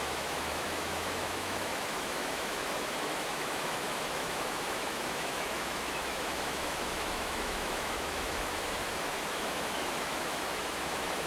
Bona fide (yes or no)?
no